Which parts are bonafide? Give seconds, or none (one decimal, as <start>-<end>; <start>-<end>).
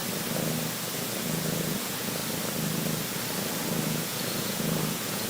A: 0.0-1.2; 2.2-3.9